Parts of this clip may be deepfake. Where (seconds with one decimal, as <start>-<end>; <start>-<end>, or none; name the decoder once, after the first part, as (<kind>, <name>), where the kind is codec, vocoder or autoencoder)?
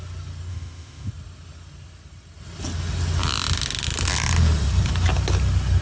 0.5-1.1 (autoencoder, DAC-VAE)